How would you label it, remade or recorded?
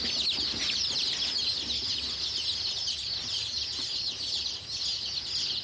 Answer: recorded